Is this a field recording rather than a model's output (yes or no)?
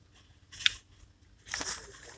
yes